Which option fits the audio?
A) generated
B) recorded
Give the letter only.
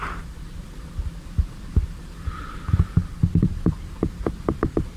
A